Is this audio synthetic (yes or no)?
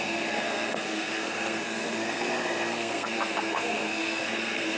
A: yes